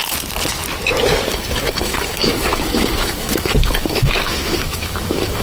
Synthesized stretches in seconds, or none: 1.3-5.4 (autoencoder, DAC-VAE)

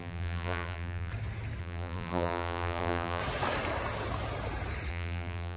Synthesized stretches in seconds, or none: 0.0-1.1 (vocoder, BigVGAN v2); 1.6-3.2; 4.9-5.6

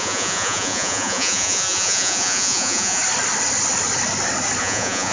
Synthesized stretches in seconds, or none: 0.0-3.0 (vocoder, Vocos); 4.6-5.1

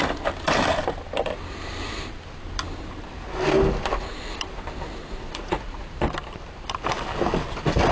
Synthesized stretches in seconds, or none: 5.0-5.9 (vocoder, Vocos)